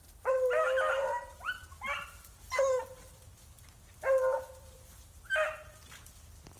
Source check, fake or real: real